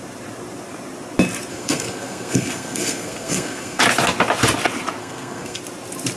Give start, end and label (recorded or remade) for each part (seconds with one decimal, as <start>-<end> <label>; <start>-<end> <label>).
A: 0.0-1.5 recorded; 1.5-3.8 remade; 3.8-5.0 recorded; 5.0-5.6 remade; 5.6-6.2 recorded